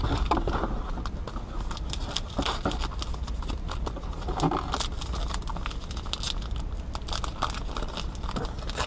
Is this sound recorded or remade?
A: recorded